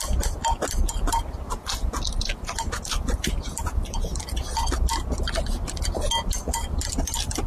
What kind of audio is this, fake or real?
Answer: real